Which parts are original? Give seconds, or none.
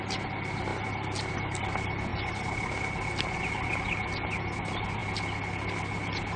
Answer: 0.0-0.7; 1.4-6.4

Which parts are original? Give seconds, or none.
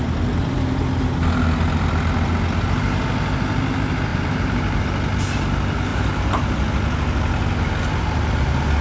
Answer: 0.0-4.1; 4.8-5.9; 6.4-8.8